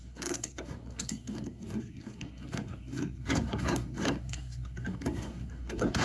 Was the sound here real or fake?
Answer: fake